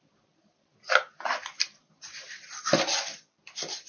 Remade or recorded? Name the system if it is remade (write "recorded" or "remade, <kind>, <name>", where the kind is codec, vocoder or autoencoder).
recorded